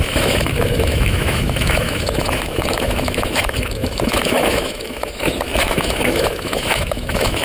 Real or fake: fake